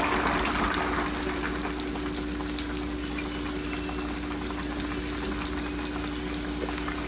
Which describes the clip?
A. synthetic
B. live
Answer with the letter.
B